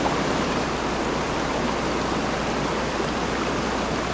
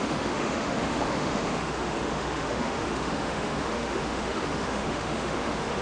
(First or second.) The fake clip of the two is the second